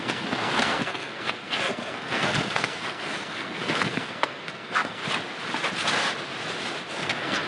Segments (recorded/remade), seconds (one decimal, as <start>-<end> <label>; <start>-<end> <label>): 0.0-5.0 remade; 5.0-6.9 recorded; 6.9-7.5 remade